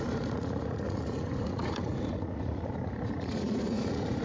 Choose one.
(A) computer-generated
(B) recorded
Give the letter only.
A